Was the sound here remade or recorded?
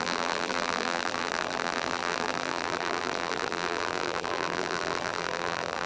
remade